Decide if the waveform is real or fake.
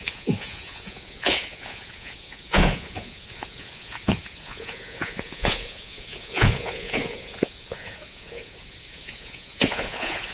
fake